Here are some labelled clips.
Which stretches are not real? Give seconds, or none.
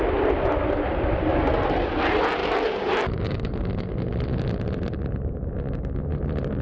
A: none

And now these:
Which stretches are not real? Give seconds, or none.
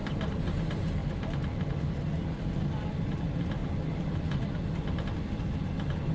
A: 0.0-0.6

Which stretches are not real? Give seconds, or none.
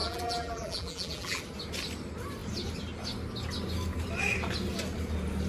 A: 0.0-1.4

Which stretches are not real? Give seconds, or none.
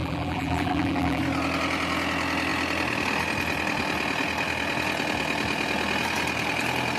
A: 0.0-1.2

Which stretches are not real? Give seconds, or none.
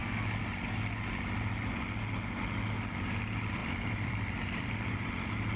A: 3.6-5.6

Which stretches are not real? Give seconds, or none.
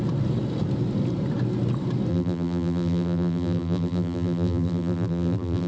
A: 2.1-5.7